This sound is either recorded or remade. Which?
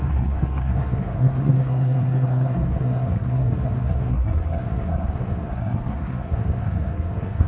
remade